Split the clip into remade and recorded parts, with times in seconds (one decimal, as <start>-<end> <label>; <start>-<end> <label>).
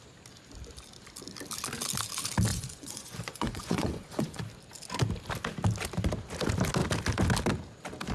0.0-2.5 recorded; 2.5-4.4 remade; 4.4-8.1 recorded